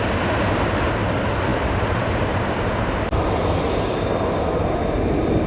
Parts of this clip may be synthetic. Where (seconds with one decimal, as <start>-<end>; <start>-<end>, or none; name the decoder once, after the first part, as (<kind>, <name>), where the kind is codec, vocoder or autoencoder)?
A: none